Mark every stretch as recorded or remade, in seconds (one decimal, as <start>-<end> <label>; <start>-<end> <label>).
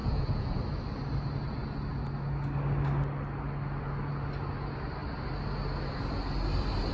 0.0-0.6 remade; 0.6-6.9 recorded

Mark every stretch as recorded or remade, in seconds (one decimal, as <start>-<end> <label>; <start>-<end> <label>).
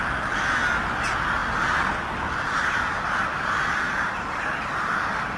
0.0-5.4 recorded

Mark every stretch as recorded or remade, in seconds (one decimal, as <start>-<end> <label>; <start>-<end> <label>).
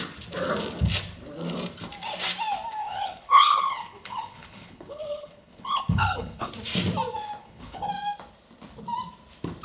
0.0-2.8 recorded; 2.8-6.5 remade; 6.5-7.4 recorded; 7.4-7.9 remade; 7.9-9.6 recorded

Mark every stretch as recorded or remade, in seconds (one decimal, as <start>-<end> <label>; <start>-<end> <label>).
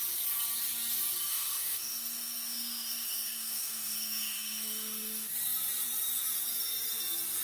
0.0-1.3 recorded; 1.3-5.3 remade; 5.3-7.4 recorded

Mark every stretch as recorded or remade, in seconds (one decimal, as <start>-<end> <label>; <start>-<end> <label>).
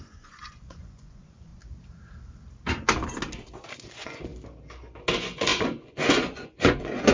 0.0-1.5 remade; 1.5-3.9 recorded; 3.9-4.3 remade; 4.3-5.1 recorded; 5.1-7.1 remade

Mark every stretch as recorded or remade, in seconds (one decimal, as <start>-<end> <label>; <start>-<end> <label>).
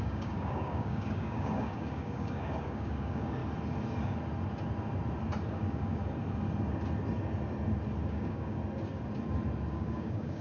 0.0-3.4 remade; 3.4-5.5 recorded; 5.5-6.0 remade; 6.0-8.1 recorded; 8.1-8.6 remade; 8.6-9.7 recorded; 9.7-10.4 remade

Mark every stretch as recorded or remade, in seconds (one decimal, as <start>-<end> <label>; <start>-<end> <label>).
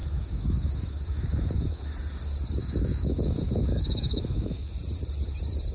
0.0-1.9 remade; 1.9-2.6 recorded; 2.6-4.7 remade; 4.7-5.7 recorded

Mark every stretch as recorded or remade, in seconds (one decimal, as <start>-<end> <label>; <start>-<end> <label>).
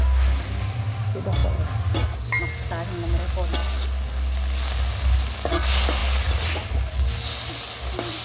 0.0-8.2 recorded